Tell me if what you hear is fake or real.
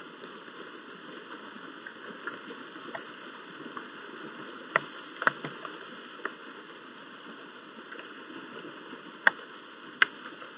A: real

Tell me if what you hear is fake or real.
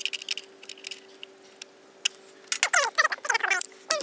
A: real